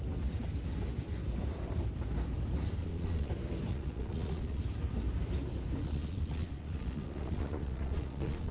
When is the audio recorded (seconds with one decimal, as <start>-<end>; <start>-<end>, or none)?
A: 0.0-2.8; 3.3-3.7; 4.6-5.8